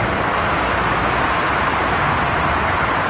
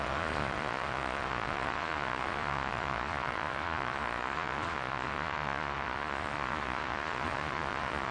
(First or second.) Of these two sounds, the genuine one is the first